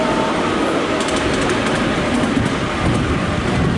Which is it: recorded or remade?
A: recorded